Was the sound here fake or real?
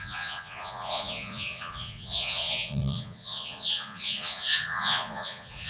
fake